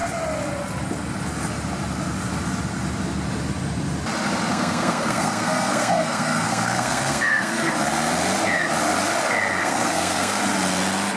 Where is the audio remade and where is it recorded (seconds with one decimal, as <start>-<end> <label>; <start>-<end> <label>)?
0.0-4.5 recorded; 4.5-7.7 remade; 7.7-9.6 recorded; 9.6-10.4 remade; 10.4-11.2 recorded